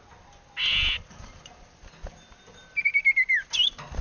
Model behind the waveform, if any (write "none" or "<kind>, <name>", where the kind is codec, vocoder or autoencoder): none